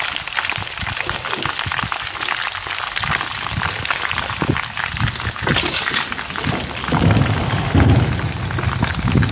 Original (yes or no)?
yes